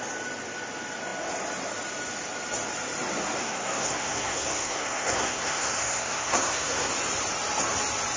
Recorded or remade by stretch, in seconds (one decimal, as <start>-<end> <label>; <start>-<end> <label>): 0.0-3.4 recorded; 3.4-6.9 remade; 6.9-8.2 recorded